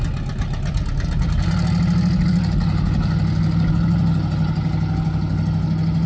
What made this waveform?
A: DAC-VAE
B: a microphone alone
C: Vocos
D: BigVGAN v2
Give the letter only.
B